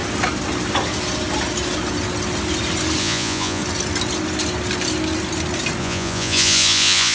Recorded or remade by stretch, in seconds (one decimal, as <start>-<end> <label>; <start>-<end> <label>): 0.0-3.0 recorded; 3.0-3.6 remade; 3.6-5.8 recorded; 5.8-7.1 remade